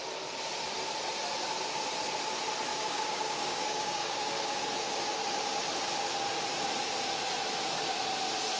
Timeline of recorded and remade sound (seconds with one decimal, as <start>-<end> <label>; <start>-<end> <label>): 0.0-2.7 recorded; 2.7-4.5 remade; 4.5-8.6 recorded